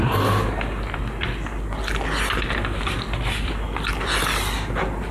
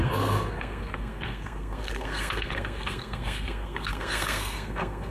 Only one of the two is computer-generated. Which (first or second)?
second